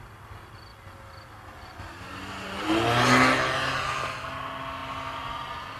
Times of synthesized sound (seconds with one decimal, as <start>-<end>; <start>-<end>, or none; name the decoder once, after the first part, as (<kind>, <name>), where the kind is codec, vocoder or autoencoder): none